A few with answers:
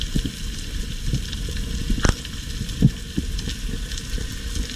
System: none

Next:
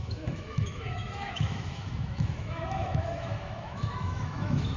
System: autoencoder, DAC-VAE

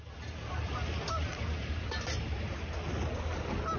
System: none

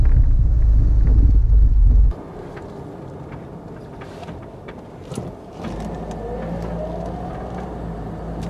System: none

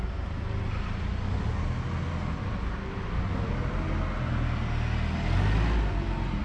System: none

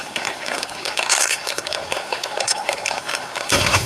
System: codec, SNAC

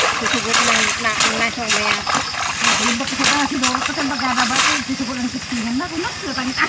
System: none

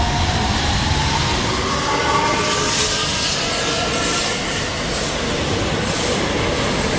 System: none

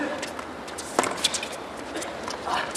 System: none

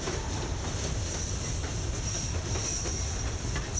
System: none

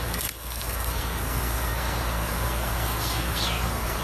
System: codec, SNAC